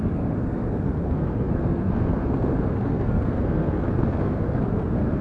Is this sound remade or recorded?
remade